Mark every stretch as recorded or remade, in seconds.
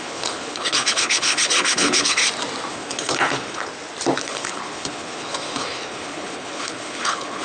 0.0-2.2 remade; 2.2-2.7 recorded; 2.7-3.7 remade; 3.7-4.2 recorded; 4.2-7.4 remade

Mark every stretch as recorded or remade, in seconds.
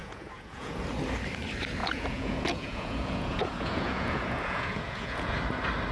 0.0-0.8 remade; 0.8-1.8 recorded; 1.8-5.3 remade; 5.3-5.9 recorded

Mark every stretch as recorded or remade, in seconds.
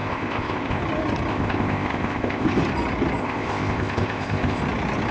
0.0-0.8 remade; 0.8-1.3 recorded; 1.3-2.6 remade; 2.6-3.2 recorded; 3.2-4.6 remade; 4.6-5.1 recorded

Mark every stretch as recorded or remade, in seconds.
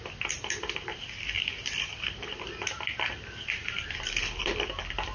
0.0-5.1 recorded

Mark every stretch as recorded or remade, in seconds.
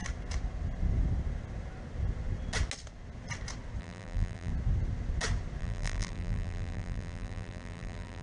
0.0-3.8 recorded; 3.8-4.5 remade; 4.5-5.6 recorded; 5.6-8.2 remade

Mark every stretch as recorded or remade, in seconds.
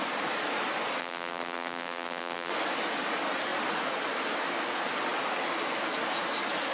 0.0-1.0 recorded; 1.0-2.5 remade; 2.5-6.7 recorded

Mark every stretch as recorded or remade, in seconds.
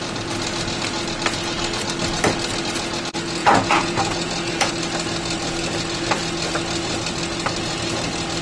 0.0-3.4 recorded; 3.4-4.7 remade; 4.7-8.4 recorded